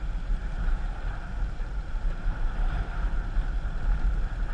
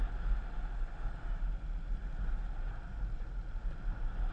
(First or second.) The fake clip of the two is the first